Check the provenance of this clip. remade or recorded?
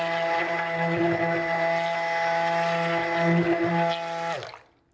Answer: recorded